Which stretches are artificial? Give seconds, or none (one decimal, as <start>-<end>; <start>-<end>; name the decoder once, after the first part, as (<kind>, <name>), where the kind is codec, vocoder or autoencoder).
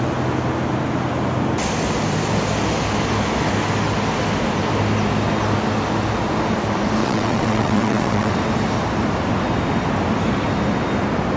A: 7.0-8.3 (vocoder, WaveNeXt)